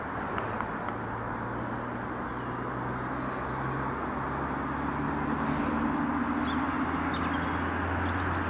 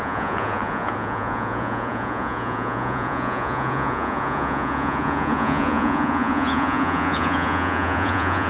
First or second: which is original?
first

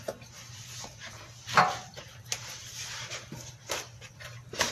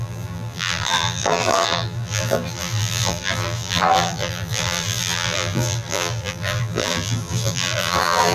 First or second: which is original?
first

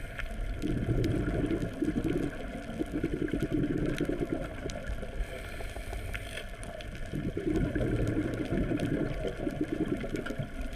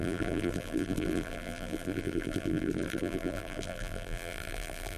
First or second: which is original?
first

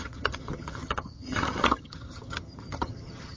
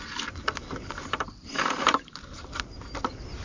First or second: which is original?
second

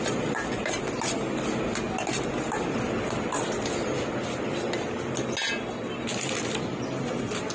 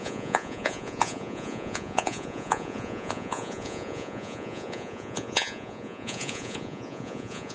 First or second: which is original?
first